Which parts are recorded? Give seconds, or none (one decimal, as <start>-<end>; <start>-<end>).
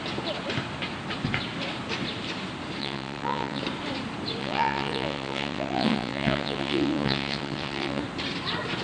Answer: 0.0-2.8; 3.6-4.4; 8.0-8.8